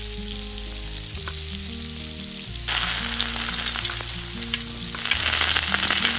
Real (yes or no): yes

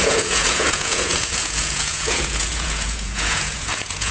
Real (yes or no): no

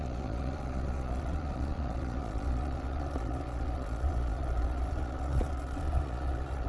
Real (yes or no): no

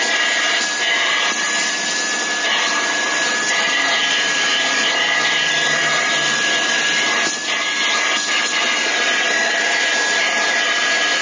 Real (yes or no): yes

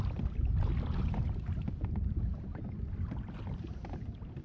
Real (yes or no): yes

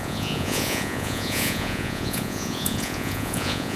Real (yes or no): no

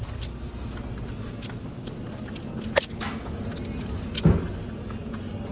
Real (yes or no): yes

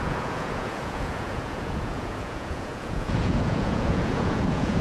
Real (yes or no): no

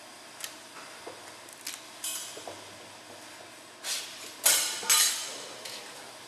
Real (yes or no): yes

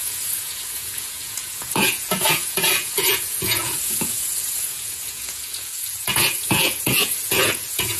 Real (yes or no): no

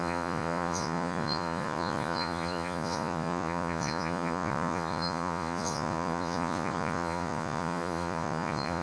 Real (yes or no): no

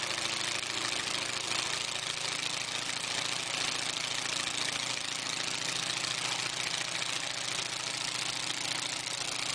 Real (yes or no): yes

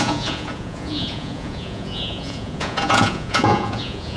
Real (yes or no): no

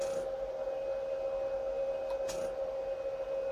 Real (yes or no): yes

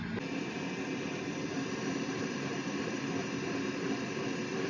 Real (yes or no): yes